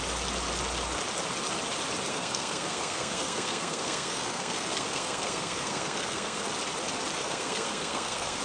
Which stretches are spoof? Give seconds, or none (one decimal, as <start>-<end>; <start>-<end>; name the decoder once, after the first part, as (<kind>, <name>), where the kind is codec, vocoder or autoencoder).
2.1-6.5 (codec, SNAC); 7.2-8.4